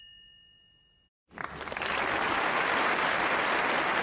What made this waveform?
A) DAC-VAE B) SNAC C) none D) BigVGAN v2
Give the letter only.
C